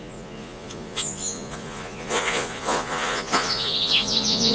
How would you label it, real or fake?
fake